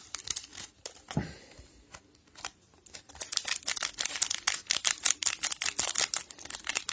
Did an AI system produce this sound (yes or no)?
no